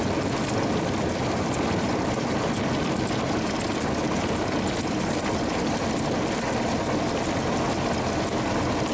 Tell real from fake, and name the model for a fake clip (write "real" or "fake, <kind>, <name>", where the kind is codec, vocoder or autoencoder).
real